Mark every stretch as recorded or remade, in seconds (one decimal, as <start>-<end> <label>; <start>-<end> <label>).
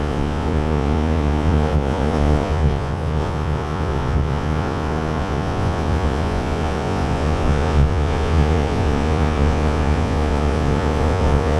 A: 0.0-11.6 remade